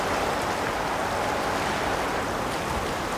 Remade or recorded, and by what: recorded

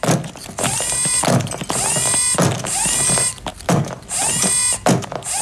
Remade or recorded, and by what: recorded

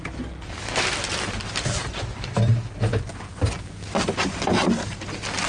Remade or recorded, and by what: recorded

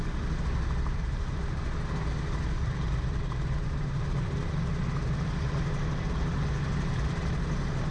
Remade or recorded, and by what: recorded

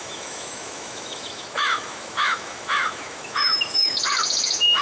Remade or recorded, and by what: remade, autoencoder, DAC-VAE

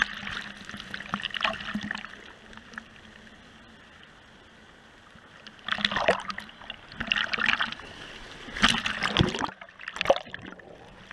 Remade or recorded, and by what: recorded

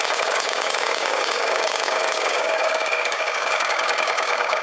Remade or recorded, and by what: remade, codec, DAC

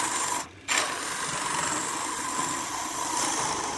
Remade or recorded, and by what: recorded